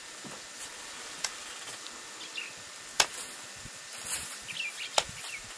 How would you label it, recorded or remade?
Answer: recorded